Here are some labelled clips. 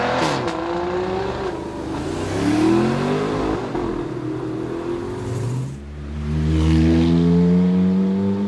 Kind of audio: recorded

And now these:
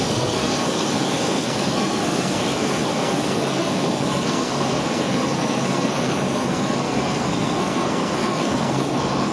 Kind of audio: remade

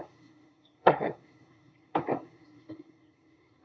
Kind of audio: remade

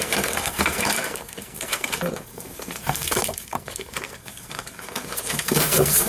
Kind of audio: remade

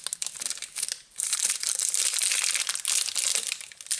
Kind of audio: recorded